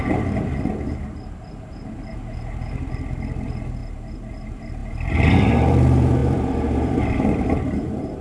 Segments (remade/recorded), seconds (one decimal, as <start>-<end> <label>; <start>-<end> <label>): 0.0-8.2 remade